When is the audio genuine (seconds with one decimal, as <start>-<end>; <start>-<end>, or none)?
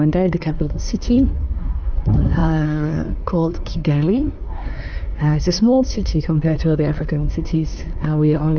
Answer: none